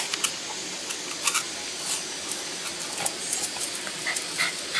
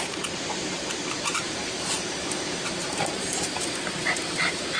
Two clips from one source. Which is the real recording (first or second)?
first